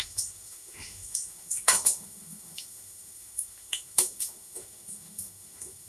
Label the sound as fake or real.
fake